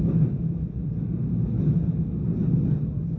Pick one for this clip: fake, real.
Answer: real